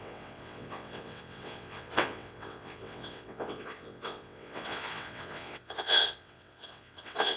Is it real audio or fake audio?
fake